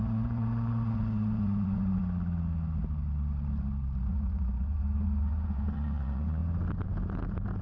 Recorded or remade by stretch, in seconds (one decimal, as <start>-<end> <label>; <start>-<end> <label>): 0.0-2.0 remade; 2.0-4.0 recorded; 4.0-6.4 remade; 6.4-7.6 recorded